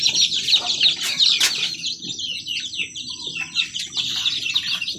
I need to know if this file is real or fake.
real